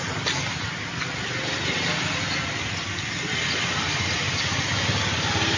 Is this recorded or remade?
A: recorded